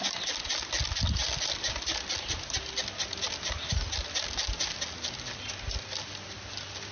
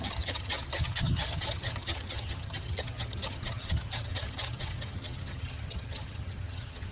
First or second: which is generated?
second